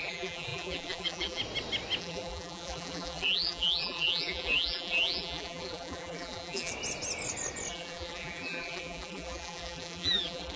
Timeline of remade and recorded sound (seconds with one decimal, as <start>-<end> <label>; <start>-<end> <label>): 0.0-1.4 remade; 1.4-2.0 recorded; 2.0-6.7 remade; 6.7-7.7 recorded; 7.7-10.6 remade